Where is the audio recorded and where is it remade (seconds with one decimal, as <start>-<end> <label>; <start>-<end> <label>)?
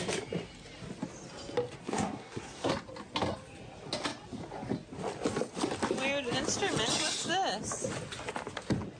0.0-1.8 recorded; 1.8-2.7 remade; 2.7-9.0 recorded